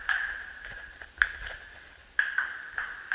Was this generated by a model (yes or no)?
yes